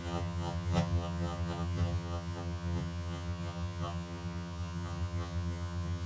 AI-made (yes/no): yes